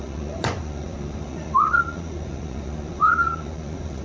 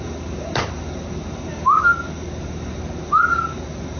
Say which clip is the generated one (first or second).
first